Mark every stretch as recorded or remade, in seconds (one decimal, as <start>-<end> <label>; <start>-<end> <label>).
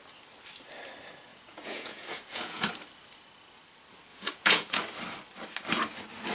0.0-1.3 recorded; 1.3-2.7 remade; 2.7-4.1 recorded; 4.1-4.8 remade; 4.8-6.3 recorded